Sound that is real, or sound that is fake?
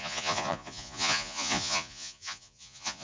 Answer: fake